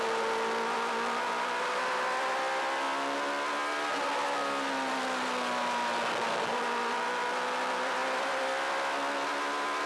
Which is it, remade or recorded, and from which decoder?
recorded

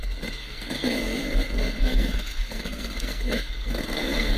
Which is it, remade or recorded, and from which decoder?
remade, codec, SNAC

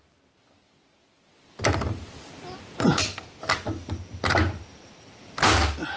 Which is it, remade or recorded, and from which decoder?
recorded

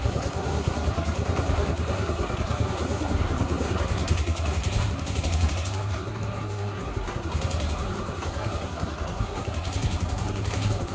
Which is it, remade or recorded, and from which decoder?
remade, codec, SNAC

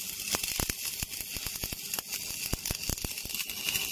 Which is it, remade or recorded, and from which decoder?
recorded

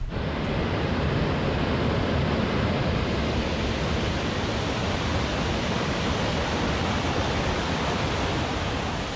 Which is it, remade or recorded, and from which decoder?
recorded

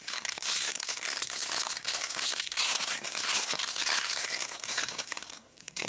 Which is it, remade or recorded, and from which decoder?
remade, codec, SNAC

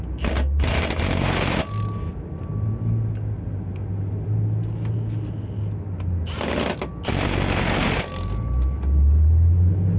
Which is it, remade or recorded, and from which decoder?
recorded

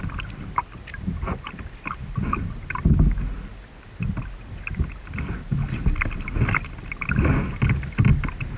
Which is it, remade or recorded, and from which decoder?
recorded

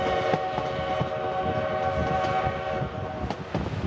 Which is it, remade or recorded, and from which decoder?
recorded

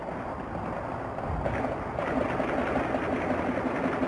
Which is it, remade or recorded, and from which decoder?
recorded